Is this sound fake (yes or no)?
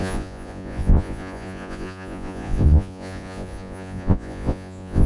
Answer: yes